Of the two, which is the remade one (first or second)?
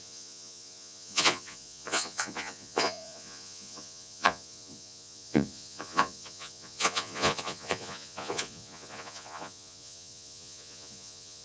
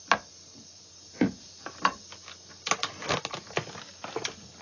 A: first